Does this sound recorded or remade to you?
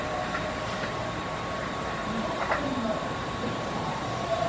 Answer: remade